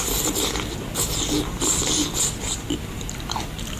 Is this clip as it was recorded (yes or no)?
yes